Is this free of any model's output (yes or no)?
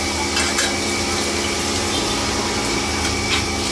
yes